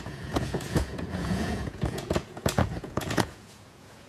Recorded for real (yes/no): no